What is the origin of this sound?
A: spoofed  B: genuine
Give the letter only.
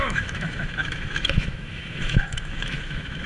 A